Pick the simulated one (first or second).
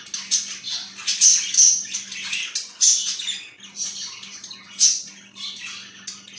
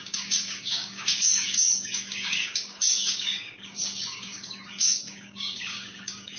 second